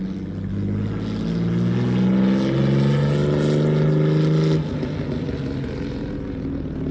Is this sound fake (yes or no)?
no